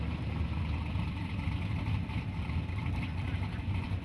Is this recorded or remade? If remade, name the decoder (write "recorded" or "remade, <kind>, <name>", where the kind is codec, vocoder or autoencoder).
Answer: remade, vocoder, BigVGAN v2